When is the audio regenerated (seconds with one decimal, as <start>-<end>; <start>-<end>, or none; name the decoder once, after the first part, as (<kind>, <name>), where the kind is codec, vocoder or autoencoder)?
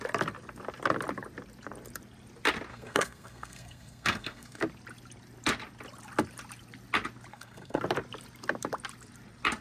2.7-4.6 (codec, SNAC); 7.3-7.8